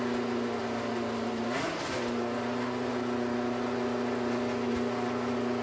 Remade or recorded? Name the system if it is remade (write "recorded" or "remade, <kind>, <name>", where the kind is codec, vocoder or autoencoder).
recorded